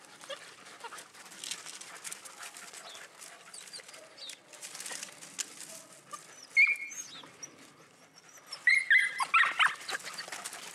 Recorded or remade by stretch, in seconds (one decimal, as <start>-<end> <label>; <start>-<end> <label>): 0.0-10.7 recorded